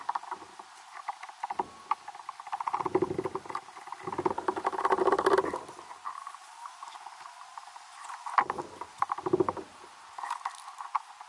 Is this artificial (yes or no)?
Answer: no